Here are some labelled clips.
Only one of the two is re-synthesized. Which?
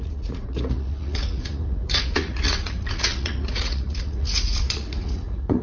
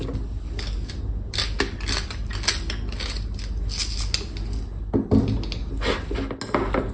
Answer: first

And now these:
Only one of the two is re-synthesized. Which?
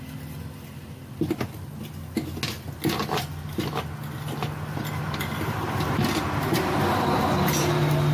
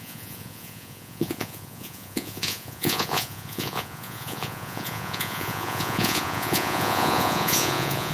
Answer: second